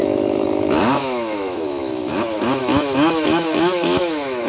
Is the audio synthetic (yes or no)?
yes